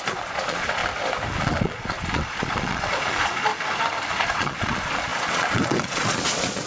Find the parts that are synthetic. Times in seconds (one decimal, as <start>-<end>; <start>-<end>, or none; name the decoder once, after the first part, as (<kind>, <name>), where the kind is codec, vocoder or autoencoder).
0.0-0.8 (vocoder, Vocos); 1.4-3.5; 4.1-6.7